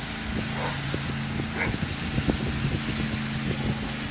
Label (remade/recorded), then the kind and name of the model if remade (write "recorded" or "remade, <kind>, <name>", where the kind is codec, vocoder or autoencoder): recorded